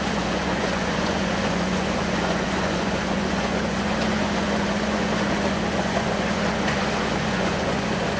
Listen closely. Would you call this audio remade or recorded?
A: remade